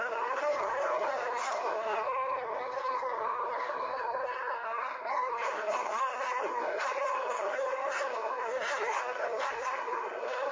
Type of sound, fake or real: fake